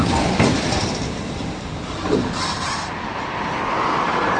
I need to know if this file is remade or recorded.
remade